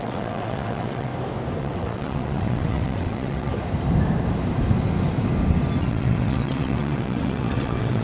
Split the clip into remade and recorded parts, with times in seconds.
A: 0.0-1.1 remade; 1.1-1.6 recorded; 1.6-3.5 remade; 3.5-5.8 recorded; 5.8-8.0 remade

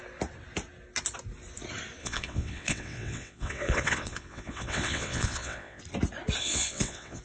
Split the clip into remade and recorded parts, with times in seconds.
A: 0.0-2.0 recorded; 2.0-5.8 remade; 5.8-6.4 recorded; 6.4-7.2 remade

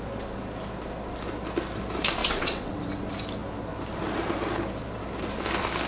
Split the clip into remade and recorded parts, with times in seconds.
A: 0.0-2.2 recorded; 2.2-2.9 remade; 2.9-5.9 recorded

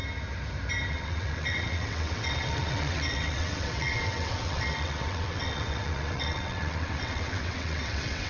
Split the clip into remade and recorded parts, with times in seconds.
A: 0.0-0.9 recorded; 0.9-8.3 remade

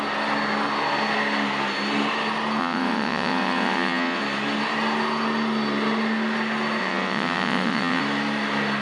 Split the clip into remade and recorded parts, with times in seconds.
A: 0.0-2.6 recorded; 2.6-4.2 remade; 4.2-6.8 recorded; 6.8-8.0 remade; 8.0-8.8 recorded

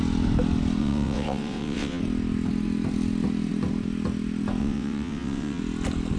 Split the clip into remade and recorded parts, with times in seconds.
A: 0.0-0.8 recorded; 0.8-2.0 remade; 2.0-4.6 recorded; 4.6-5.6 remade; 5.6-6.2 recorded

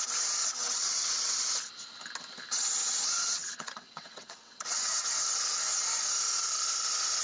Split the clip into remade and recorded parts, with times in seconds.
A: 0.0-0.4 recorded; 0.4-1.3 remade; 1.3-2.8 recorded; 2.8-5.1 remade; 5.1-7.2 recorded